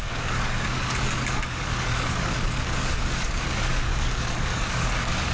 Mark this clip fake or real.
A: fake